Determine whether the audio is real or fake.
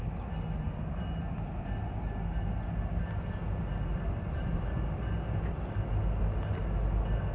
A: real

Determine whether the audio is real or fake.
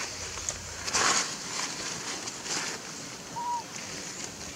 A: real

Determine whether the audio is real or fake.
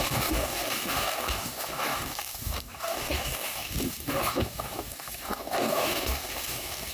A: fake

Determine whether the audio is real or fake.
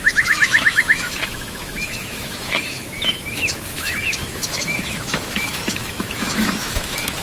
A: fake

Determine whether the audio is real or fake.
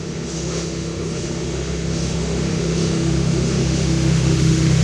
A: fake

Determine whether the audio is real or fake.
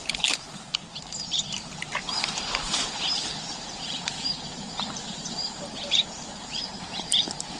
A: fake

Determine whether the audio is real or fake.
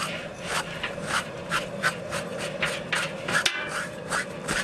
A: real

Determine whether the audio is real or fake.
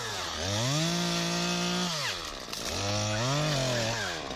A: real